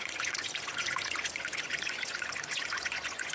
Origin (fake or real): fake